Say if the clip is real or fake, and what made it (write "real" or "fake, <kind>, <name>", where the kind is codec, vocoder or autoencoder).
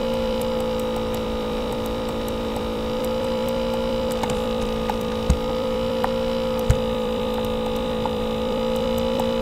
fake, vocoder, BigVGAN v2